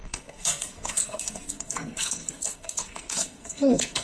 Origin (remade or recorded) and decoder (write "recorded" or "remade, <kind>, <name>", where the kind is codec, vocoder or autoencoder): remade, codec, SNAC